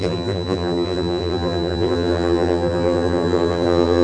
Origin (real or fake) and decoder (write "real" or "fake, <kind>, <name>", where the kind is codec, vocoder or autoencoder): fake, vocoder, BigVGAN v2